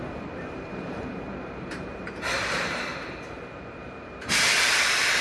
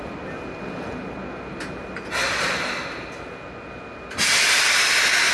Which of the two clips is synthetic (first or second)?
first